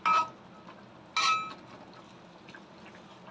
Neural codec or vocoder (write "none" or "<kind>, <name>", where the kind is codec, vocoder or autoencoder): none